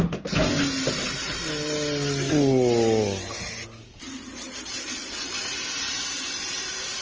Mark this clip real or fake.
real